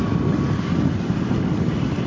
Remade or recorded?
recorded